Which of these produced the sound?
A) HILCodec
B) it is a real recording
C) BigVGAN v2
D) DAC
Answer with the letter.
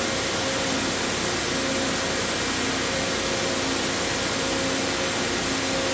B